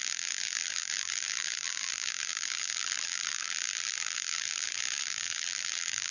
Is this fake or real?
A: fake